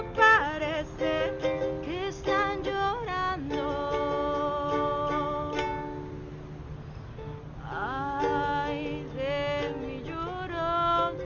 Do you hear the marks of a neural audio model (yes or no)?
no